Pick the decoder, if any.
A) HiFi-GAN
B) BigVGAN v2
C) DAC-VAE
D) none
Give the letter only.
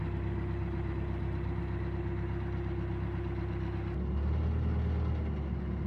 D